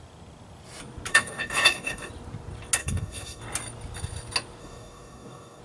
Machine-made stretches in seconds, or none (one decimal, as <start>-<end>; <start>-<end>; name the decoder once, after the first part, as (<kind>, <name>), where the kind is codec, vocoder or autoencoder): 1.1-2.1 (codec, DAC); 2.8-3.4; 4.6-5.6